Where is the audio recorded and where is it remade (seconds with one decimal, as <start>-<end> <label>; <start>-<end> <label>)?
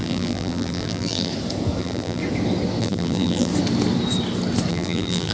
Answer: 0.0-1.3 remade; 1.3-1.8 recorded; 1.8-2.2 remade; 2.2-2.8 recorded; 2.8-3.5 remade; 3.5-4.7 recorded; 4.7-5.3 remade